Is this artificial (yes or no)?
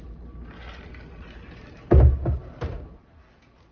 no